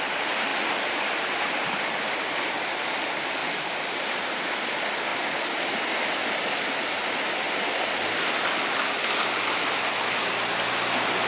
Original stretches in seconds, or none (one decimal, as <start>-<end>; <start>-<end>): 0.0-3.4; 4.4-11.3